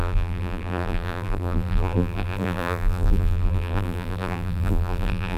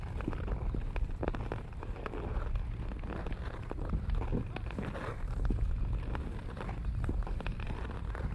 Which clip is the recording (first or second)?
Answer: second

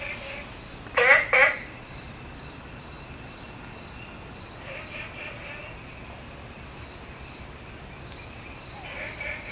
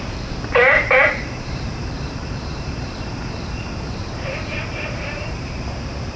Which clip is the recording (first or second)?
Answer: first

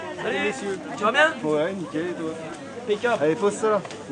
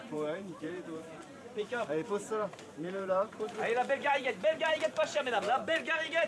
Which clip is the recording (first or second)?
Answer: first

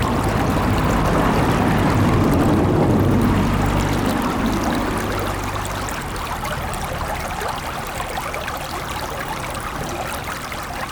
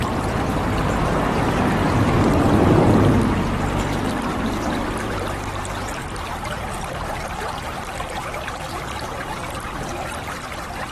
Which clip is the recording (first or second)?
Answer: first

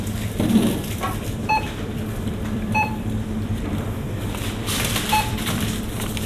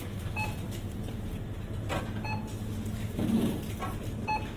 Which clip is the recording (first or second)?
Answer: second